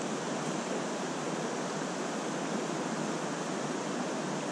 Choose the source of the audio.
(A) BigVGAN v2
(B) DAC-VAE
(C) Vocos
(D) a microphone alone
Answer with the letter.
D